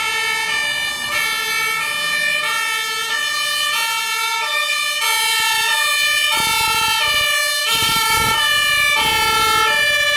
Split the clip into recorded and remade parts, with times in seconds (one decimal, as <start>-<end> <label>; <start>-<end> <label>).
0.0-7.6 recorded; 7.6-8.4 remade; 8.4-10.2 recorded

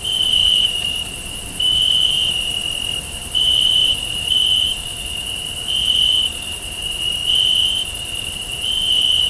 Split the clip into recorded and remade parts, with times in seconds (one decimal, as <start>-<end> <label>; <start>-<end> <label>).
0.0-7.2 remade; 7.2-8.3 recorded; 8.3-9.3 remade

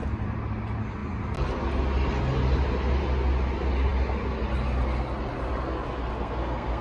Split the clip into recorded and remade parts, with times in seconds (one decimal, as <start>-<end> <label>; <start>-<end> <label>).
0.0-6.1 recorded; 6.1-6.8 remade

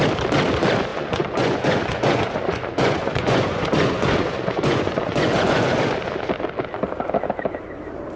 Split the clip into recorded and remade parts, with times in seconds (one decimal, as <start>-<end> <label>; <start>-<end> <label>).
0.0-0.9 recorded; 0.9-5.8 remade; 5.8-8.2 recorded